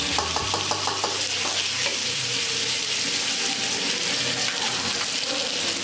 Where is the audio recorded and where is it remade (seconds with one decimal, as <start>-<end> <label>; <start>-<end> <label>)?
0.0-1.9 recorded; 1.9-2.8 remade; 2.8-5.8 recorded